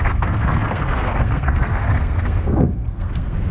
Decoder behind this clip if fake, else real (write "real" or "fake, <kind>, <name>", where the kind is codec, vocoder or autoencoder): fake, codec, SNAC